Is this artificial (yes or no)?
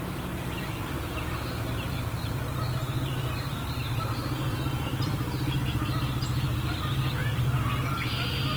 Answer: yes